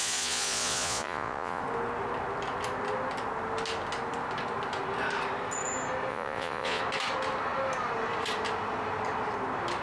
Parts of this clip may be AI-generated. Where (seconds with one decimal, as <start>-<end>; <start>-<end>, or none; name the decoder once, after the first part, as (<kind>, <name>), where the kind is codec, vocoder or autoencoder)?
0.0-1.6 (vocoder, Vocos); 6.1-6.8